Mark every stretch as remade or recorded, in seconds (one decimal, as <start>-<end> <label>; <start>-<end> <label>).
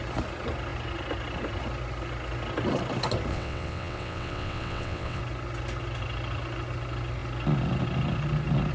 0.0-3.3 recorded; 3.3-5.2 remade; 5.2-8.7 recorded